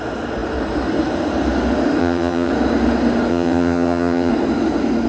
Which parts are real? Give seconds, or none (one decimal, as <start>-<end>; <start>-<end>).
0.0-2.0; 2.5-3.3; 4.3-5.1